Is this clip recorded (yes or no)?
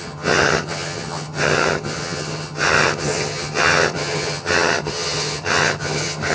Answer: no